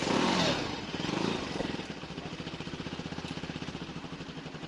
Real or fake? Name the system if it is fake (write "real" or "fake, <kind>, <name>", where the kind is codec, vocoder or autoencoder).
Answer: fake, vocoder, BigVGAN v2